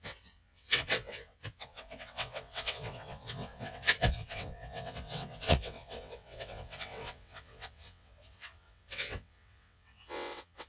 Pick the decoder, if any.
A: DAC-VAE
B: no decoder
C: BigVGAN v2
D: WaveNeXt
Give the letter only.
D